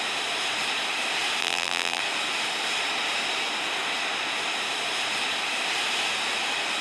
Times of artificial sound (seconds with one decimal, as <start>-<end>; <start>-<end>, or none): 1.4-2.0